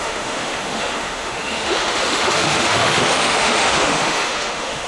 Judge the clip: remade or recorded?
remade